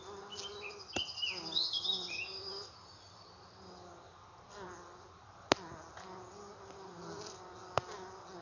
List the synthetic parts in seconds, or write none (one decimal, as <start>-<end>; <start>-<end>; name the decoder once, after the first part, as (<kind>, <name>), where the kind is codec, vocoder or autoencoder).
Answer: none